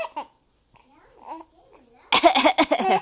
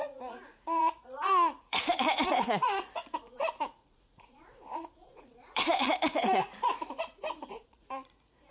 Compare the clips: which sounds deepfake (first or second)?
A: second